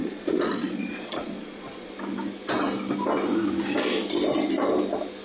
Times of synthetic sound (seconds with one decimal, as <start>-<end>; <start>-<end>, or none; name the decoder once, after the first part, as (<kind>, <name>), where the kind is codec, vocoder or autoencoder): 0.0-1.9 (vocoder, Vocos)